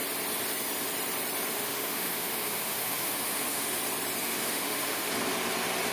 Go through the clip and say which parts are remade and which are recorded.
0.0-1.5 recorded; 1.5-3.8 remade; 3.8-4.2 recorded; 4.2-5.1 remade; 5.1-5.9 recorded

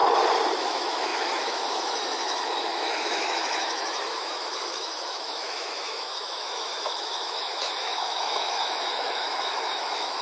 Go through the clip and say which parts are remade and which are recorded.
0.0-0.6 recorded; 0.6-10.2 remade

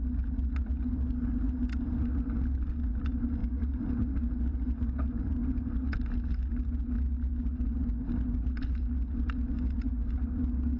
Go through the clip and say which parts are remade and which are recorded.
0.0-10.8 recorded

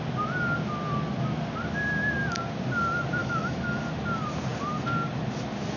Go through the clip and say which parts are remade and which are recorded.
0.0-3.2 recorded; 3.2-3.8 remade; 3.8-5.8 recorded